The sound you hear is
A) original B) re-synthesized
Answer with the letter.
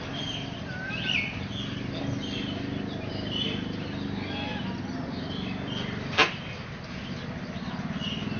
A